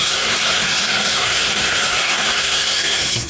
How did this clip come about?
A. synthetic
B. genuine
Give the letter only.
A